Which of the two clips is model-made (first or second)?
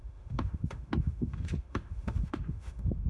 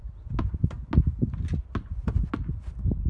first